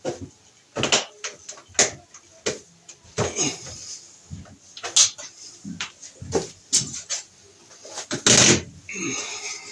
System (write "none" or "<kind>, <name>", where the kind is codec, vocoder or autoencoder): none